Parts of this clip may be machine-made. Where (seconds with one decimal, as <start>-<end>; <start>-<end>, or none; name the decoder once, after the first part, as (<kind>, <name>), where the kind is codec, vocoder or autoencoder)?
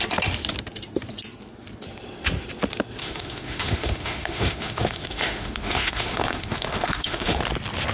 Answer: 3.0-7.4 (autoencoder, DAC-VAE)